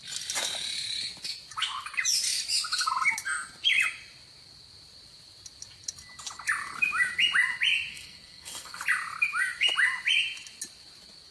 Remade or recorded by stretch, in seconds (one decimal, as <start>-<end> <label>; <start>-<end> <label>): 0.0-7.9 recorded; 7.9-8.8 remade; 8.8-11.3 recorded

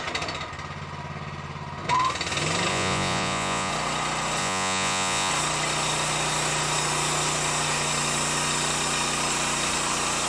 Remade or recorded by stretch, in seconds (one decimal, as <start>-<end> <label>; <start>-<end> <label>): 0.0-2.7 recorded; 2.7-3.7 remade; 3.7-4.4 recorded; 4.4-5.3 remade; 5.3-10.3 recorded

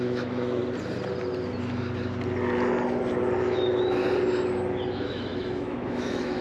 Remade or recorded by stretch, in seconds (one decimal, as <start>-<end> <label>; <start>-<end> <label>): 0.0-0.6 remade; 0.6-3.4 recorded; 3.4-4.0 remade; 4.0-4.9 recorded; 4.9-6.4 remade

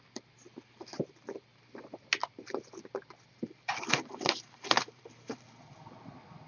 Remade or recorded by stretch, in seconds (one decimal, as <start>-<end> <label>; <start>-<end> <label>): 0.0-2.2 recorded; 2.2-6.1 remade; 6.1-6.5 recorded

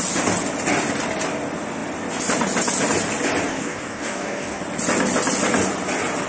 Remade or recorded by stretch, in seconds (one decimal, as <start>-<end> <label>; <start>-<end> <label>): 0.0-3.5 recorded; 3.5-4.6 remade; 4.6-6.3 recorded

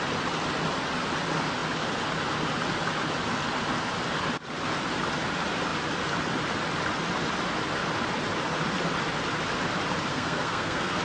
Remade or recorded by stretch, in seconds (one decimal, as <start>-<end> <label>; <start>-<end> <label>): 0.0-10.1 recorded; 10.1-11.0 remade